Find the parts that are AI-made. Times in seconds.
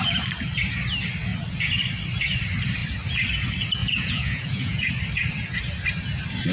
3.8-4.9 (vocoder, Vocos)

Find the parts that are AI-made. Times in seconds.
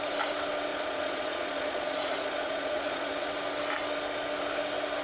0.7-3.3 (vocoder, Vocos)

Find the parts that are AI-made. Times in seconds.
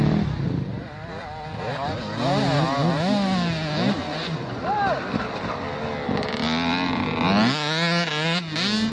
4.0-4.6 (vocoder, Vocos)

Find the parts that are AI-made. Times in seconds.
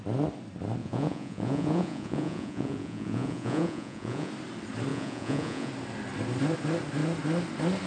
0.8-4.3 (vocoder, Vocos); 4.9-5.7